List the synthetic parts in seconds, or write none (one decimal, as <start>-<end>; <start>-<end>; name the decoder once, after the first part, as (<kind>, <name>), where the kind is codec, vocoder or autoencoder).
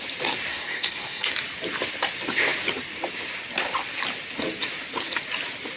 0.5-1.3 (codec, SNAC)